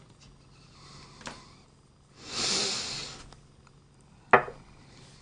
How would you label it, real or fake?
real